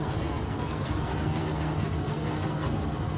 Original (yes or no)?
no